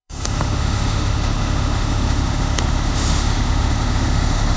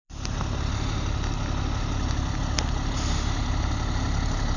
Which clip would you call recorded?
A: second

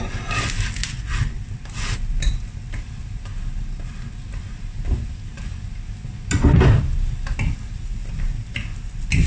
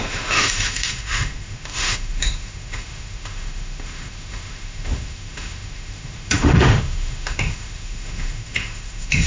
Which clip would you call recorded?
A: first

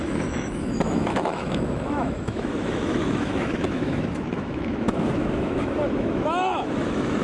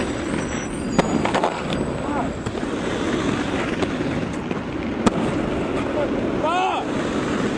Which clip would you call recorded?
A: second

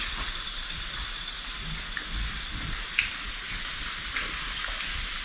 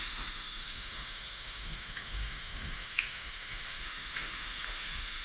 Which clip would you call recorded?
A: first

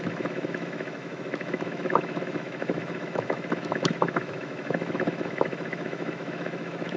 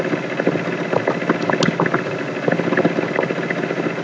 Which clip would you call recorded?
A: second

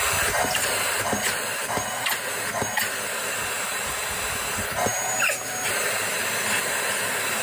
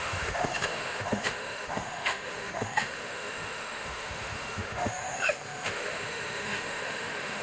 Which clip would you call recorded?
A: first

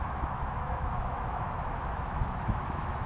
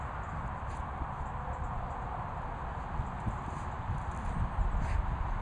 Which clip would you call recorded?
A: second